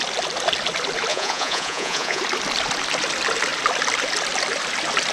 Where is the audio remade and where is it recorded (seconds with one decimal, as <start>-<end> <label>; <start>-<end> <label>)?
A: 0.0-1.1 recorded; 1.1-2.2 remade; 2.2-5.1 recorded